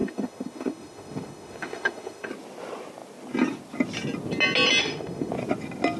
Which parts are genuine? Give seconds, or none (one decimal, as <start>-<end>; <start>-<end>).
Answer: 2.3-4.8; 5.3-6.0